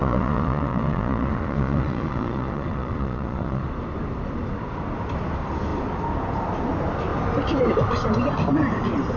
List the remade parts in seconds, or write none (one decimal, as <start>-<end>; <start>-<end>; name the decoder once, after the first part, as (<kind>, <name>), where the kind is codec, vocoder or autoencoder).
0.0-3.6 (vocoder, Vocos)